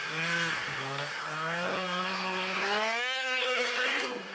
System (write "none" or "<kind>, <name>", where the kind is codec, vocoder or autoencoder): codec, SNAC